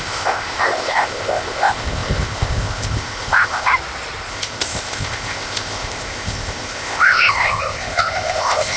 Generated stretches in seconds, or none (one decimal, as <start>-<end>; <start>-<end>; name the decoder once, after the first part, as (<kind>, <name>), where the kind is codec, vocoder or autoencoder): 0.0-3.7 (codec, ZipCodec); 4.3-8.8